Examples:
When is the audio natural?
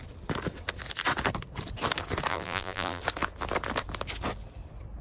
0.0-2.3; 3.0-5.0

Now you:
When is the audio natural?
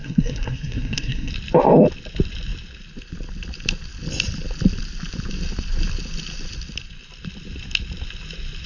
1.3-8.7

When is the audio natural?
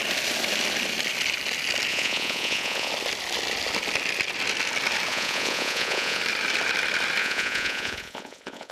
0.0-1.9; 2.9-5.1; 6.2-7.2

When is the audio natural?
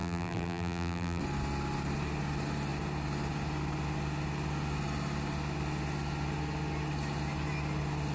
1.2-8.1